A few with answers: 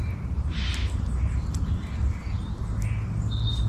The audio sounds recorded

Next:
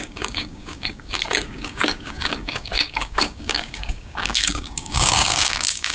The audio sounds remade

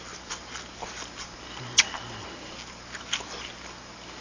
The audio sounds recorded